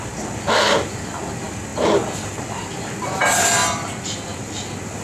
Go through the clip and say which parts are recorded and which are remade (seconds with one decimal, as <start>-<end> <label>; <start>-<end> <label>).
0.0-5.0 recorded